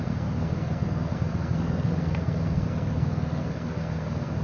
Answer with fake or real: fake